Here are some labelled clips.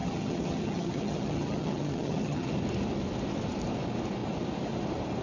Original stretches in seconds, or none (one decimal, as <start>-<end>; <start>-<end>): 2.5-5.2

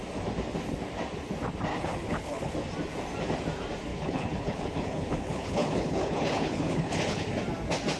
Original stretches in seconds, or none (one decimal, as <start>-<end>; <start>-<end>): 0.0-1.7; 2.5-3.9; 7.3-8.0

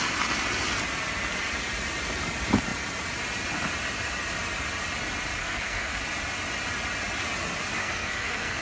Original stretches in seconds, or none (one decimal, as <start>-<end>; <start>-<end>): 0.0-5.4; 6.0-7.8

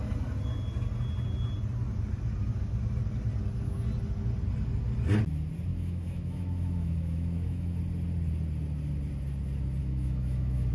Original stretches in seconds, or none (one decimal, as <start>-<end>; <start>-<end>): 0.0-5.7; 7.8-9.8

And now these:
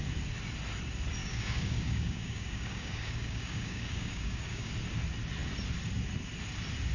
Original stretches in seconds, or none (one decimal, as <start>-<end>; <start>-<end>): 0.0-1.2; 4.7-6.9

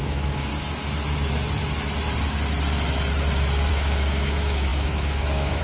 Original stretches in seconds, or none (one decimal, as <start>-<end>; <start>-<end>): 0.5-3.7

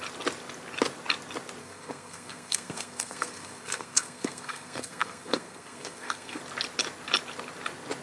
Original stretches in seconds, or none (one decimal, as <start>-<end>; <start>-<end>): 0.0-1.6; 6.4-8.0

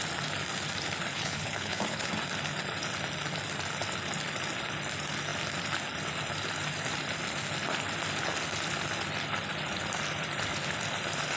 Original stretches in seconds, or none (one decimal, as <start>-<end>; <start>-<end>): 0.0-1.1; 2.1-11.4